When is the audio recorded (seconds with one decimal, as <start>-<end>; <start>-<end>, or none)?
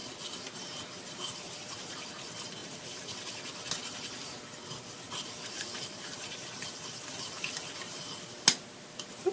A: 0.0-9.3